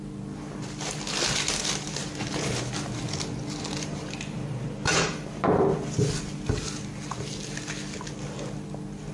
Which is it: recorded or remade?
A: recorded